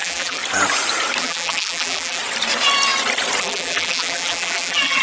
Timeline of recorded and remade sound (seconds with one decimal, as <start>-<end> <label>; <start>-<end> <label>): 0.0-0.4 remade; 0.4-1.2 recorded; 1.2-2.2 remade; 2.2-3.4 recorded; 3.4-5.0 remade